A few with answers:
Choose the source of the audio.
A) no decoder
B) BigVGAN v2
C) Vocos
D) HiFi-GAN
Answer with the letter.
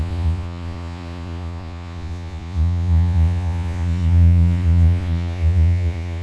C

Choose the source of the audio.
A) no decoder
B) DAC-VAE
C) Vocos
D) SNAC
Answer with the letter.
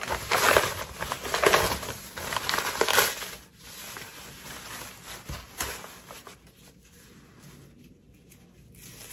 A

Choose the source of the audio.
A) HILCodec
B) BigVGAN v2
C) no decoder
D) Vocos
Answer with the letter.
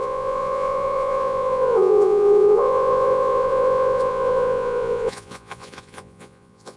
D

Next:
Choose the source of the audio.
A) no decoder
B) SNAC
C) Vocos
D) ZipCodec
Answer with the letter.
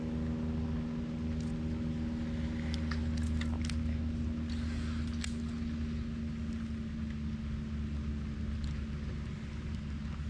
A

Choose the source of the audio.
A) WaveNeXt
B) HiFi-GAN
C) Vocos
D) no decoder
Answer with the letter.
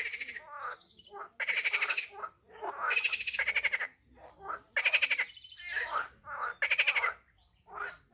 D